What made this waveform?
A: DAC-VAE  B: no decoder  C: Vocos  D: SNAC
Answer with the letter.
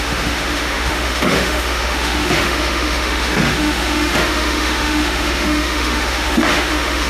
A